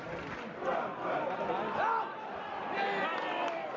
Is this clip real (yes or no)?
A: no